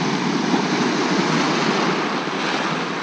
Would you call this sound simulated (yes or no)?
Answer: no